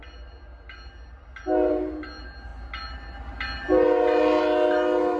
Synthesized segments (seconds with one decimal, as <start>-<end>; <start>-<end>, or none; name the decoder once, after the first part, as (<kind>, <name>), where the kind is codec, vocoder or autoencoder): none